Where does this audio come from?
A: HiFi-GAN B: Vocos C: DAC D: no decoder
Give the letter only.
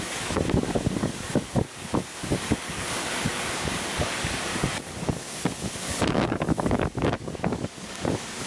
C